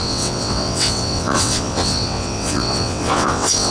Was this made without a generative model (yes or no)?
no